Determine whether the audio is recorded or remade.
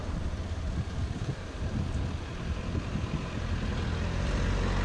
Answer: recorded